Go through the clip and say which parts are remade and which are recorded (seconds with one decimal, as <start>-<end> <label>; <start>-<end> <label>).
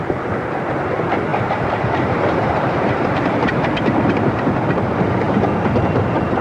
0.0-1.3 recorded; 1.3-4.4 remade; 4.4-6.4 recorded